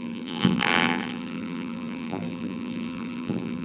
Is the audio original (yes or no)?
no